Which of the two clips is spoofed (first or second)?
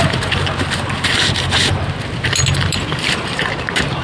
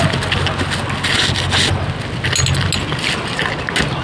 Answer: first